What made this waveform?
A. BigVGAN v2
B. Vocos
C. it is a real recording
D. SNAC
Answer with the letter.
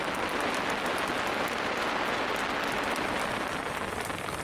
C